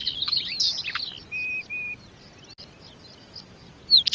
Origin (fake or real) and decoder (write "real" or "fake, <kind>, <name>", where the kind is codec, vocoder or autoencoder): real